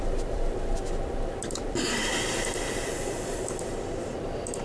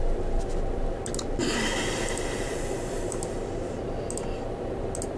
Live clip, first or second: second